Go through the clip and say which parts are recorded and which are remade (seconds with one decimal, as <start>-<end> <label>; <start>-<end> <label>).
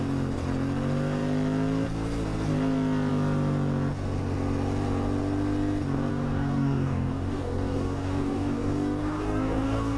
0.0-6.1 recorded; 6.1-10.0 remade